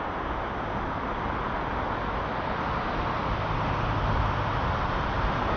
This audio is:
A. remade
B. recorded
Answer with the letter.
B